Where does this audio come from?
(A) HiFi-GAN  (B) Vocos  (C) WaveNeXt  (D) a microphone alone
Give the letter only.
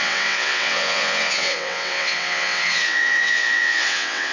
C